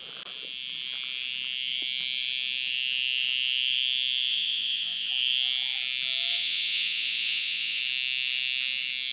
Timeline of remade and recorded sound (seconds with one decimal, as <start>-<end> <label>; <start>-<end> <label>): 0.0-4.3 recorded; 4.3-5.1 remade; 5.1-6.3 recorded; 6.3-7.8 remade; 7.8-9.1 recorded